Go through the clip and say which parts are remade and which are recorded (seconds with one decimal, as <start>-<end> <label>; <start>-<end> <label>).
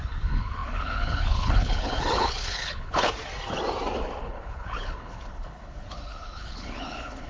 0.0-3.2 remade; 3.2-4.2 recorded; 4.2-7.3 remade